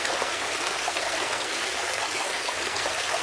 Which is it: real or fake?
fake